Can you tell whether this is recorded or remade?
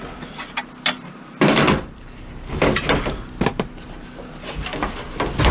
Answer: recorded